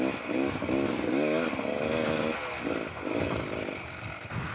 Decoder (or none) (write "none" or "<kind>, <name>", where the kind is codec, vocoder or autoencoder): none